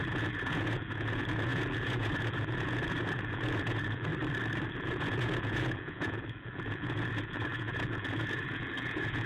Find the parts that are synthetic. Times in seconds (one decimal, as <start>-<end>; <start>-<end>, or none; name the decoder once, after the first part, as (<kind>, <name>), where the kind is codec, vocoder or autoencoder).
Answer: 0.0-4.1 (vocoder, Vocos); 4.7-9.3